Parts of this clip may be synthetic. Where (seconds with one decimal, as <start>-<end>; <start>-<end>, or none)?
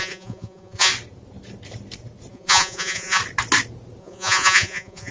0.0-0.9; 2.3-3.2; 4.0-5.1